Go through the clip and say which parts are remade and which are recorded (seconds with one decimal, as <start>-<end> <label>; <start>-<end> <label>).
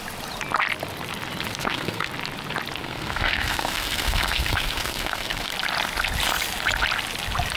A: 0.0-1.6 recorded; 1.6-2.1 remade; 2.1-2.8 recorded; 2.8-5.5 remade; 5.5-7.6 recorded